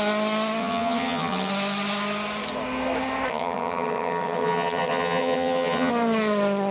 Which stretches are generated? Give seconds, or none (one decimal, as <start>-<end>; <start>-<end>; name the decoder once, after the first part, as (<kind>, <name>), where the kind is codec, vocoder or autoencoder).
0.6-1.5 (vocoder, HiFi-GAN); 3.3-5.9